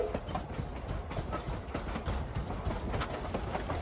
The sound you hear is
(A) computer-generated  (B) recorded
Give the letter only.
B